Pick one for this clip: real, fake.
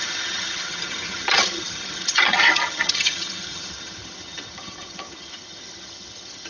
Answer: fake